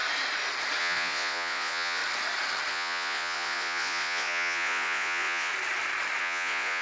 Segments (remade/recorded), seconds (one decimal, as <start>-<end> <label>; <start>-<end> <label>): 0.0-0.8 recorded; 0.8-2.0 remade; 2.0-2.7 recorded; 2.7-5.5 remade; 5.5-6.2 recorded; 6.2-6.8 remade